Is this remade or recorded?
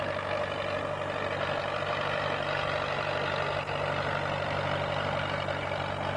recorded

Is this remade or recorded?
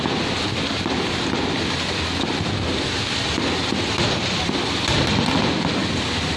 recorded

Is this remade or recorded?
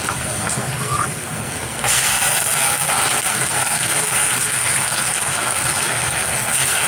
remade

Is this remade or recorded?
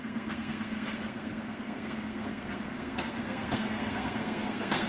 remade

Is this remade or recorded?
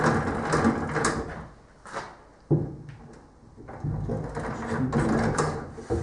recorded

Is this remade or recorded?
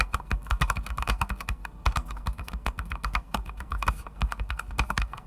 remade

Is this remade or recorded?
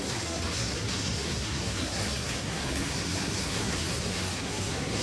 remade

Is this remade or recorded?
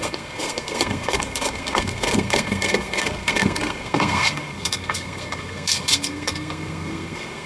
remade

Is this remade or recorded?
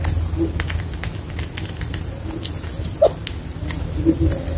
recorded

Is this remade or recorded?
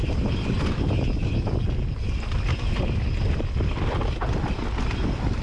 recorded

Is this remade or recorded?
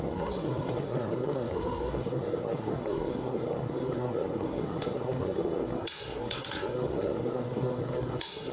remade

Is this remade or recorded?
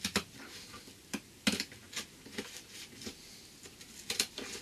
recorded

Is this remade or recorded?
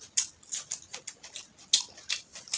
recorded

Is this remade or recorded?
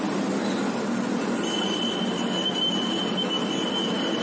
recorded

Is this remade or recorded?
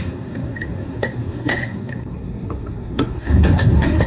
remade